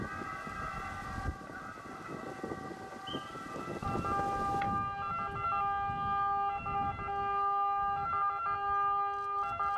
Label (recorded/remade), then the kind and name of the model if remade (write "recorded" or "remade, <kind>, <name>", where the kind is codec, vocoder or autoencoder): recorded